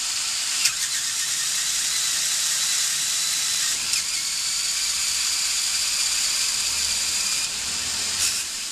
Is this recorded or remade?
remade